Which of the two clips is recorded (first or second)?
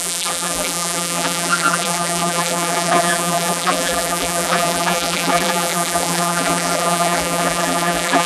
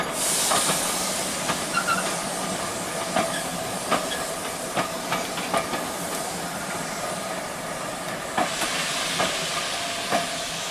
second